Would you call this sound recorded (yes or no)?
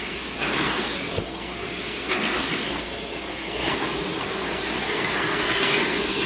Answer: no